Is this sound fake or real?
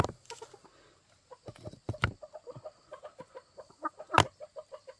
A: real